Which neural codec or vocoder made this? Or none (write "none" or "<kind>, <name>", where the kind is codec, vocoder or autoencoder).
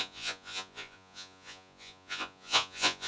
vocoder, Vocos